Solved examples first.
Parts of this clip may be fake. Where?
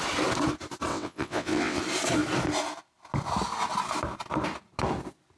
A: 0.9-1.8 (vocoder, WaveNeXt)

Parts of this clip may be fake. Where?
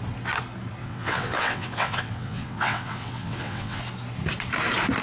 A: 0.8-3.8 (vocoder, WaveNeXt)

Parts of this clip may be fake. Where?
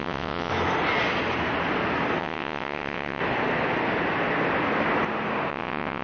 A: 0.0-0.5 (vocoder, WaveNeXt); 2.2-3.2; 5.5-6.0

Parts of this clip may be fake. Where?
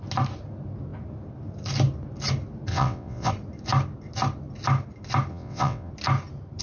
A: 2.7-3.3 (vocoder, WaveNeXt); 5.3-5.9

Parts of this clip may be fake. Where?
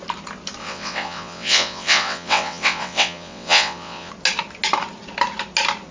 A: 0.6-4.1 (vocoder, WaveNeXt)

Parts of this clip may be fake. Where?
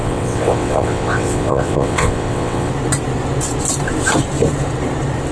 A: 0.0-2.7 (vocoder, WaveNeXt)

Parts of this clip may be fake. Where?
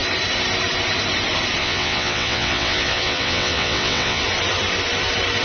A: 1.6-4.2 (vocoder, WaveNeXt)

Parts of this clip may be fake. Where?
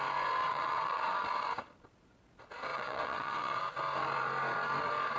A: 0.4-1.0 (vocoder, WaveNeXt); 2.7-3.6